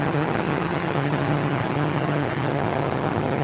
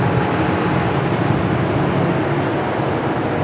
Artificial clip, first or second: first